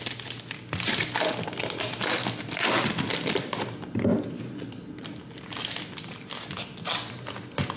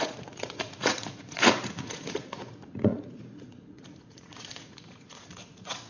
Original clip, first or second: first